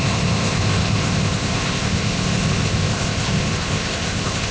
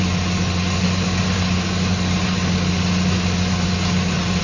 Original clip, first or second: second